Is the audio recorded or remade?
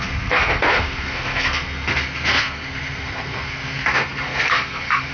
remade